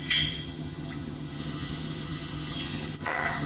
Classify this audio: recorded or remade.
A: remade